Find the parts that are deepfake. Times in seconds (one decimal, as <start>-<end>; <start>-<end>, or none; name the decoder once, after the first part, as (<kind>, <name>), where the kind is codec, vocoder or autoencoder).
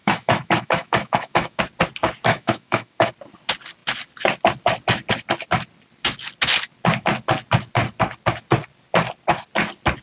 0.0-1.6 (autoencoder, DAC-VAE); 2.3-3.1